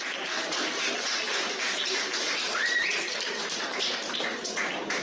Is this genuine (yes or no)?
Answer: no